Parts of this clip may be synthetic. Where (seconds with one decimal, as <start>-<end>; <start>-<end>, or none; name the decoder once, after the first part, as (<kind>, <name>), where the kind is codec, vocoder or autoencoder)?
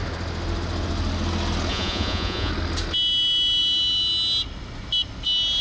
1.7-2.5 (vocoder, Vocos)